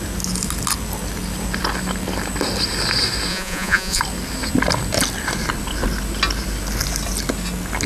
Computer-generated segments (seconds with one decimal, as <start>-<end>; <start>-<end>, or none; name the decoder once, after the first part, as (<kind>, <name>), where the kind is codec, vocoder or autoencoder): 3.3-4.0 (vocoder, Vocos)